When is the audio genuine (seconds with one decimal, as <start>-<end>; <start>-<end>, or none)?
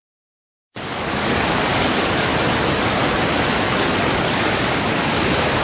2.3-3.5